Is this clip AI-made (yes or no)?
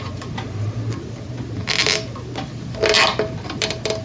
no